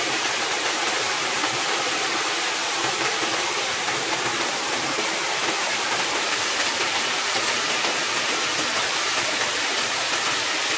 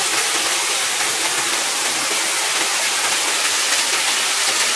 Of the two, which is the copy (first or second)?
first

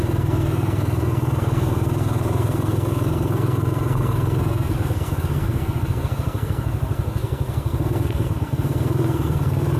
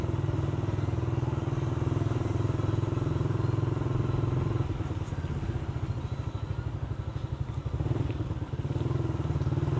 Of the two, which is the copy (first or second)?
first